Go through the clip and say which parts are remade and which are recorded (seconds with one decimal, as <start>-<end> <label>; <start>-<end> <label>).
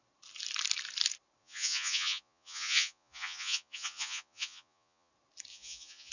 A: 0.0-1.4 recorded; 1.4-5.1 remade; 5.1-5.5 recorded; 5.5-6.1 remade